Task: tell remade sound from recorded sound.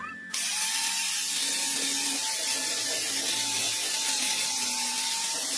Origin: recorded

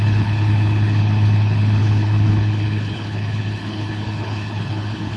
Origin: remade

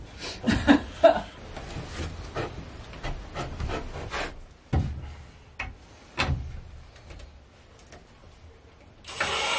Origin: recorded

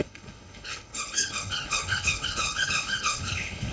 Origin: remade